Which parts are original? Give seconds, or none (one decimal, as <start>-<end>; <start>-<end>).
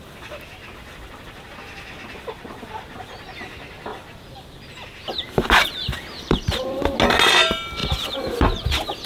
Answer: 0.0-3.9; 6.8-7.8